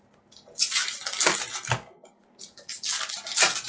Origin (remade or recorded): recorded